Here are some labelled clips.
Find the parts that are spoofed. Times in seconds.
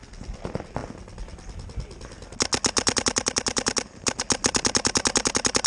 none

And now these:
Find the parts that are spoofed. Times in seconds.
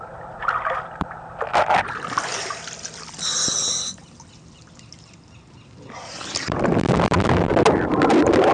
0.0-2.3 (vocoder, BigVGAN v2); 6.1-7.5; 8.1-8.5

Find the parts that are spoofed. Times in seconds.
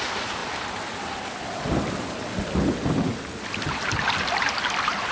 none